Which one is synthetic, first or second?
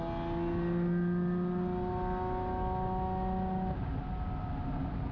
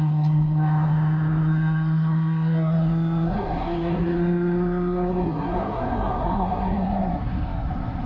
second